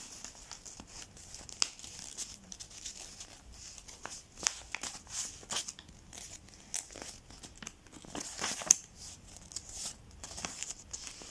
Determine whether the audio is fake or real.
real